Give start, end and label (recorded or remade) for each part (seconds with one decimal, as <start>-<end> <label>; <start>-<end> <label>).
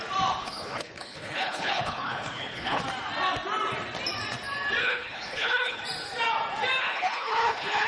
0.0-0.4 recorded; 0.4-2.8 remade; 2.8-4.8 recorded; 4.8-5.8 remade; 5.8-6.8 recorded; 6.8-7.9 remade